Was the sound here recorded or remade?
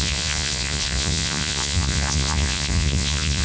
remade